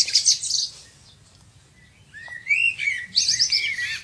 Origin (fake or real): real